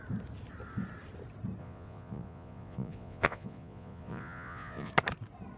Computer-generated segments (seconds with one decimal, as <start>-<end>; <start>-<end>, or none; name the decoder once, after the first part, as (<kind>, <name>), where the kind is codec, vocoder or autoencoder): 1.6-4.9 (vocoder, Vocos)